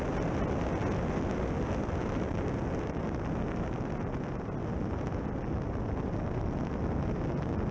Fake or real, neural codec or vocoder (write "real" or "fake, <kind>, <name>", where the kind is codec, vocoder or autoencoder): real